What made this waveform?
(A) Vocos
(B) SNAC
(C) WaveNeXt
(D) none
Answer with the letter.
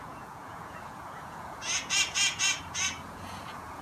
A